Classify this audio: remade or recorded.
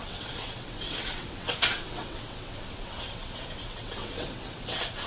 remade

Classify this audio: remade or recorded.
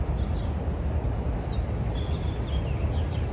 recorded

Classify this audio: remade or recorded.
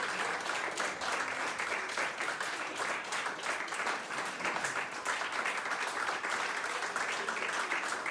recorded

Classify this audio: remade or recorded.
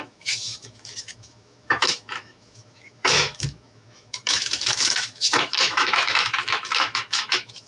remade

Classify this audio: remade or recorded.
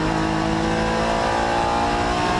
recorded